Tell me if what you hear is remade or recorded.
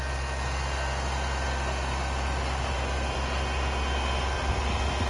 recorded